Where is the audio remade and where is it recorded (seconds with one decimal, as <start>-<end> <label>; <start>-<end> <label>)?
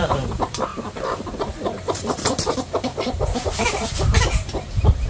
0.0-5.1 remade